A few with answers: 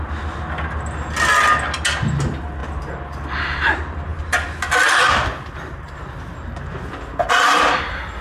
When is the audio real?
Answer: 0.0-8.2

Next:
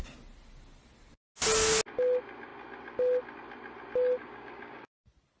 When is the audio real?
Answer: 0.0-4.2; 4.9-5.4

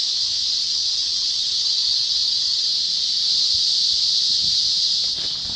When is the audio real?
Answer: 0.5-5.6

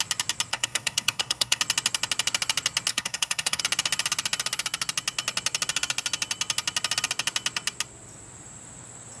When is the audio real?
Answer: 0.0-0.5; 1.6-2.9; 3.6-9.2

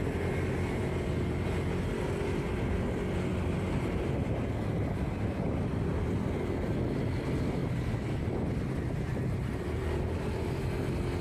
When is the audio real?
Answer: 0.0-9.8; 10.3-11.2

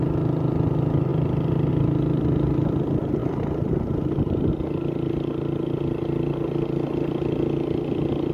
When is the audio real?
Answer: 0.0-3.2; 4.5-8.3

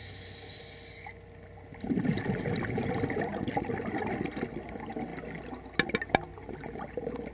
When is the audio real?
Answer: 0.0-7.3